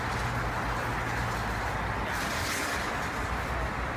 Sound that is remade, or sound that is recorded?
recorded